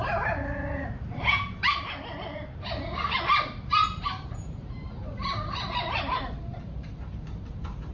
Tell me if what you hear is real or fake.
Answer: fake